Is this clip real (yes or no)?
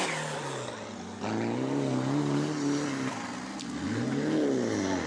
yes